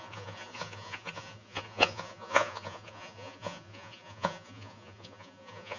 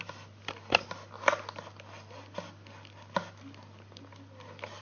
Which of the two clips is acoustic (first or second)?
second